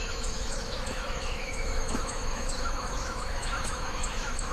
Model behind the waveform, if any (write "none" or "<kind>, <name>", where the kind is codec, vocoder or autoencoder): autoencoder, DAC-VAE